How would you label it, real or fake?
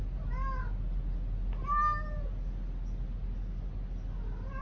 real